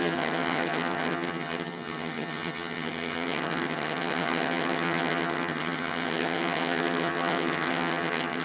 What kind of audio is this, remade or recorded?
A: remade